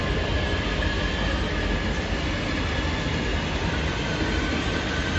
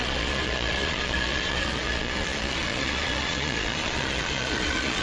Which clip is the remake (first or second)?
second